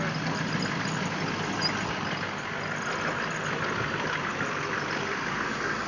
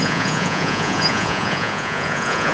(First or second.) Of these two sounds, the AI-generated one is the second